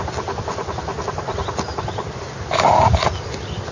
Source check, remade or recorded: recorded